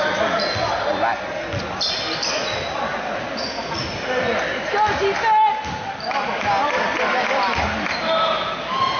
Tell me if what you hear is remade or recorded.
recorded